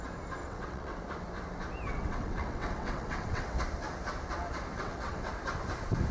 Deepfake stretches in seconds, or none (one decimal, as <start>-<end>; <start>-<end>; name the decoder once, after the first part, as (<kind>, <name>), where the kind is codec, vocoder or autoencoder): 0.4-1.0 (vocoder, WaveNeXt); 1.9-3.6; 4.7-5.3